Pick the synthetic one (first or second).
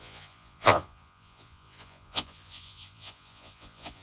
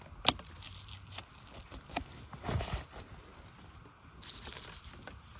first